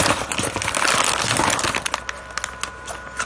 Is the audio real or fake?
real